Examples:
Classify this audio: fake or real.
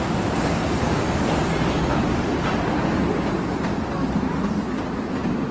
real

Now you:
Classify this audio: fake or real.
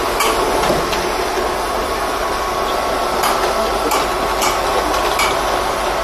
real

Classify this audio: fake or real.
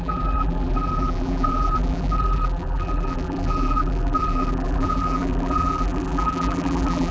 fake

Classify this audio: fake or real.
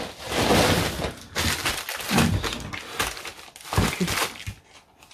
real